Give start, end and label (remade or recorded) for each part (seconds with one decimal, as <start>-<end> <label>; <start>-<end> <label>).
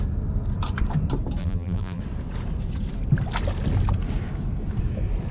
0.0-1.4 recorded; 1.4-2.0 remade; 2.0-5.3 recorded